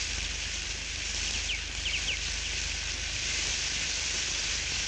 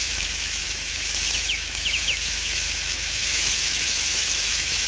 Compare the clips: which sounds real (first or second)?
first